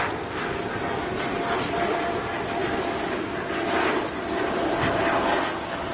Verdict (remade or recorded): recorded